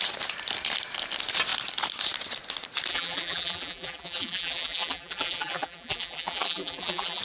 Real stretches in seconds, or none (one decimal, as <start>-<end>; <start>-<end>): 0.0-2.9